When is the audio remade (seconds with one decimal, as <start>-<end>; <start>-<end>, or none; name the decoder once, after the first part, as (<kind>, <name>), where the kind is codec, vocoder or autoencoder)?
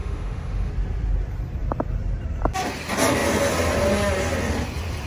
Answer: 0.0-0.7 (autoencoder, DAC-VAE)